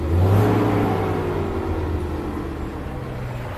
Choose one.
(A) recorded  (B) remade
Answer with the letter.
A